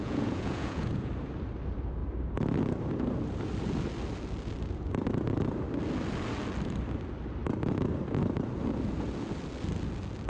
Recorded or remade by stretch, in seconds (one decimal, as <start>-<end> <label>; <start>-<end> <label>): 0.0-1.1 remade; 1.1-10.3 recorded